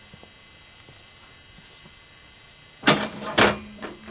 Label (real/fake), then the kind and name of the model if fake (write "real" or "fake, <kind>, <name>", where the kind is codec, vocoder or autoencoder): real